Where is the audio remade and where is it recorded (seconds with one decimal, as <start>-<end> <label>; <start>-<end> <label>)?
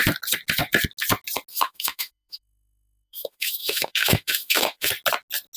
0.0-1.5 recorded; 1.5-4.9 remade; 4.9-5.6 recorded